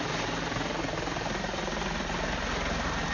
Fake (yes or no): yes